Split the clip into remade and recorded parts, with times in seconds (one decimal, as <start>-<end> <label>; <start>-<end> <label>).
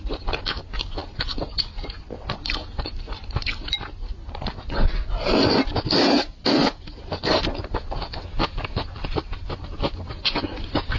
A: 0.0-11.0 recorded